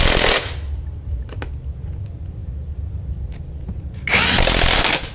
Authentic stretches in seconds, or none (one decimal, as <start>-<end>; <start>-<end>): 0.0-5.1